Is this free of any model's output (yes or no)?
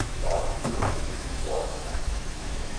no